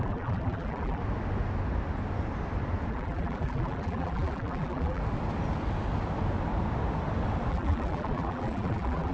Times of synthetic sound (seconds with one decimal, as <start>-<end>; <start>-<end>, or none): 0.0-1.0; 2.9-5.0; 7.5-9.1